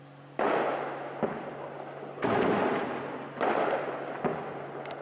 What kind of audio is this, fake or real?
real